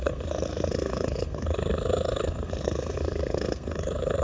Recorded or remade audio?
remade